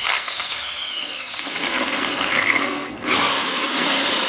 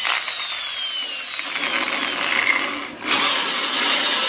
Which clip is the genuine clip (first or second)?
second